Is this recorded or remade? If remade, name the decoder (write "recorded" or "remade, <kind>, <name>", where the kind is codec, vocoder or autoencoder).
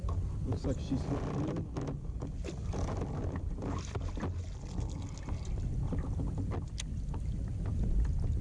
recorded